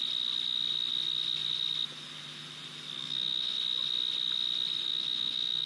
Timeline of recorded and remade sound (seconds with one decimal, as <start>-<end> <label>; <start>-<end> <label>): 0.0-3.0 recorded; 3.0-3.6 remade; 3.6-4.9 recorded; 4.9-5.7 remade